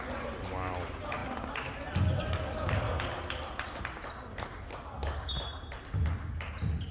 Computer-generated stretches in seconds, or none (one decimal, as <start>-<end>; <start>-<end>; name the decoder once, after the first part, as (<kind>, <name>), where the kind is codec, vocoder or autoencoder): none